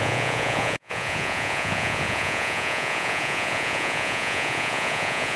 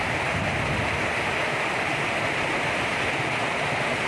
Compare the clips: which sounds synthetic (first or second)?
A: first